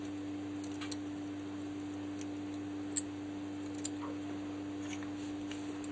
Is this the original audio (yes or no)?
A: yes